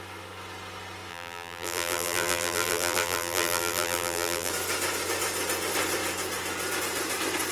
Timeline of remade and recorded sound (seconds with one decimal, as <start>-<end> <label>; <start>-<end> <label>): 0.0-1.1 recorded; 1.1-4.5 remade; 4.5-7.5 recorded